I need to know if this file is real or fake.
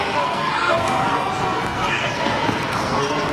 fake